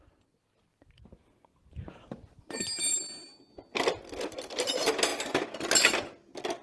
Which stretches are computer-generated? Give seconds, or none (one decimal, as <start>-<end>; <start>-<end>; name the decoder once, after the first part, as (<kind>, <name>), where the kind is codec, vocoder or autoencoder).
none